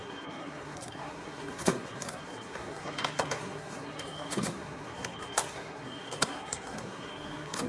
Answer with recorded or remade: remade